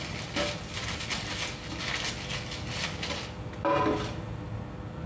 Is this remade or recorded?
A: recorded